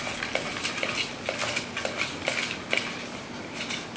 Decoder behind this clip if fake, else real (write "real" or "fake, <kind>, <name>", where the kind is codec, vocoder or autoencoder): real